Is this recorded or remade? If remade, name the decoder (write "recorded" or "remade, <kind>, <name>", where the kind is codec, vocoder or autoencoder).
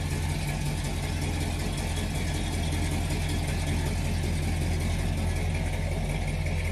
recorded